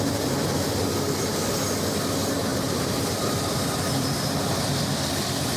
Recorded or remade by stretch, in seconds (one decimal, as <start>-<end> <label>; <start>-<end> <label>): 0.0-5.6 remade